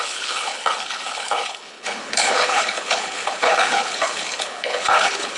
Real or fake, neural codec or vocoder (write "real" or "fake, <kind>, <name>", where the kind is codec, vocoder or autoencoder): fake, codec, HILCodec